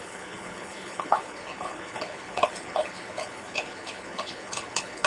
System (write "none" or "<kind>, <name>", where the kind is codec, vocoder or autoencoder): codec, HILCodec